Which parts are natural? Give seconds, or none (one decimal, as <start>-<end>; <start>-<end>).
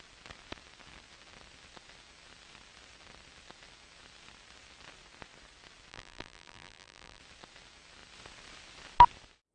0.0-5.9; 7.2-9.5